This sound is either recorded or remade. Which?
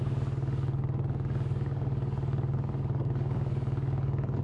remade